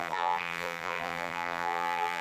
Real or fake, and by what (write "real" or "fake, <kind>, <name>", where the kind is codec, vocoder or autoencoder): fake, vocoder, BigVGAN v2